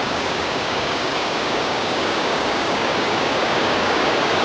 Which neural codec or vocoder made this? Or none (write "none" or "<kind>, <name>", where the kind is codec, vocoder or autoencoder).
codec, DAC